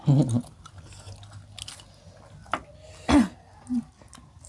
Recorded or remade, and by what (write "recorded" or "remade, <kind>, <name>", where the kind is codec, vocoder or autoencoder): recorded